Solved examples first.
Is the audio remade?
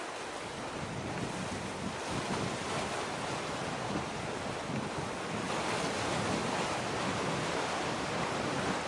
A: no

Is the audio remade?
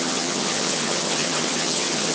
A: yes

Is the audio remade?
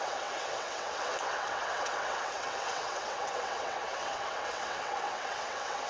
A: yes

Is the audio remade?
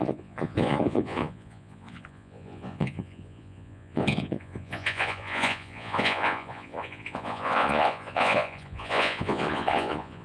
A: yes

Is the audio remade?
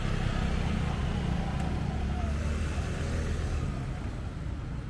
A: no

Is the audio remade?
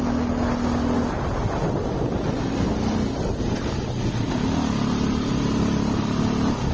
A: no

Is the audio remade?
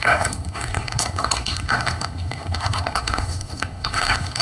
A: yes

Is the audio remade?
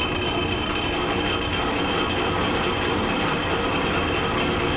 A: no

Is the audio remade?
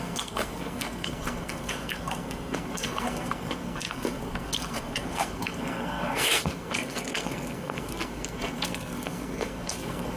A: yes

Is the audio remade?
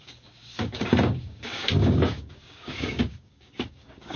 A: yes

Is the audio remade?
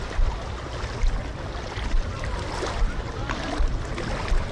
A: no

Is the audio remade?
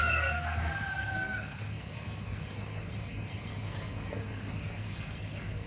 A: yes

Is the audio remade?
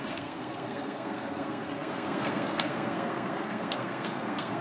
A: yes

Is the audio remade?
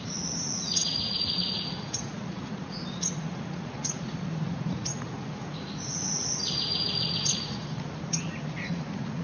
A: yes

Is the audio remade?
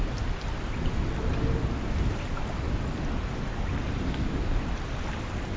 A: no